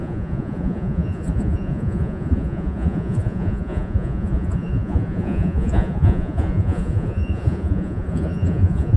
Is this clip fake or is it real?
fake